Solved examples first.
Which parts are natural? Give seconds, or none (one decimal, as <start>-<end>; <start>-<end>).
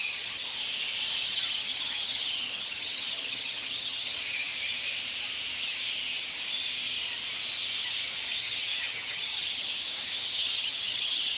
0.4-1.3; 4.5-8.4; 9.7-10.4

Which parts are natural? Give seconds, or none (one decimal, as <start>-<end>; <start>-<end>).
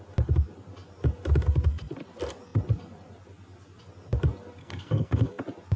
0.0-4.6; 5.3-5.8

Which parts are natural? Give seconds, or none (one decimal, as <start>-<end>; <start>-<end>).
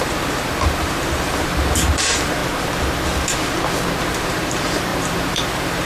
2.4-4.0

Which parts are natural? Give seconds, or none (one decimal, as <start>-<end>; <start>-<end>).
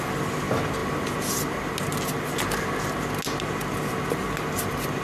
0.0-5.0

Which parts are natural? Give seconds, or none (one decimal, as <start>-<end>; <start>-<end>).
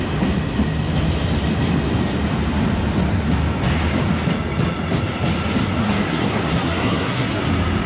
0.0-5.8; 7.4-7.9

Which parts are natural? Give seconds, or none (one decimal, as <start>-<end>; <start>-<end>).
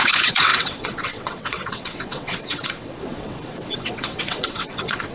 none